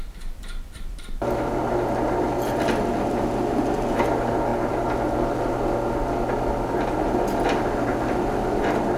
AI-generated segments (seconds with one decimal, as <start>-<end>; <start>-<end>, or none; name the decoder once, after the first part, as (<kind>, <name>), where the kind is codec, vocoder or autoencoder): none